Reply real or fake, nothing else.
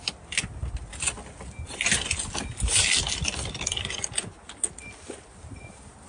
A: real